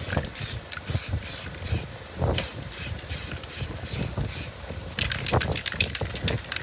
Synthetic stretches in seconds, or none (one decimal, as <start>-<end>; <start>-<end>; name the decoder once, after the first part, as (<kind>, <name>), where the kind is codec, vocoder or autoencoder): 0.0-2.5 (vocoder, BigVGAN v2)